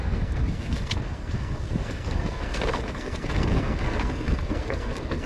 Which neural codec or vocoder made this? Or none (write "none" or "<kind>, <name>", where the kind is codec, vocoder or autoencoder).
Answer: codec, SNAC